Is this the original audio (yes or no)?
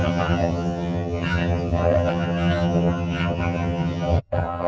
no